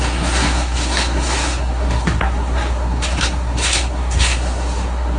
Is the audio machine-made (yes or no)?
yes